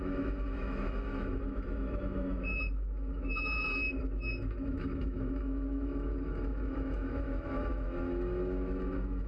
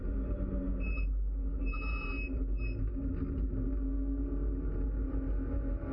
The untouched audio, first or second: second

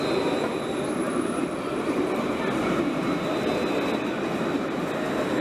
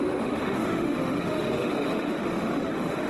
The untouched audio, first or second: first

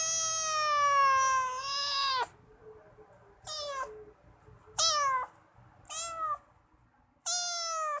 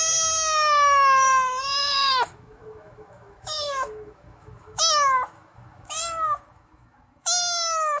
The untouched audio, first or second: first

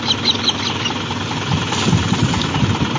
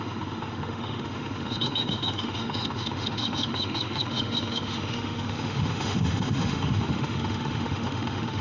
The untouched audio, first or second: first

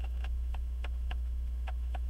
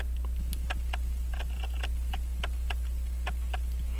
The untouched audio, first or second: second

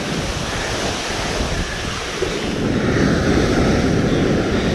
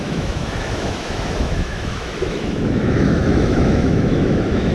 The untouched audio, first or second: first